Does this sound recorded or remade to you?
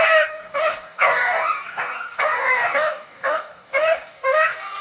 remade